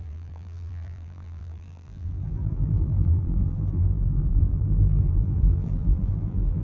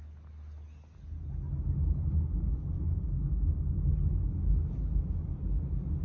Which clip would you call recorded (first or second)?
second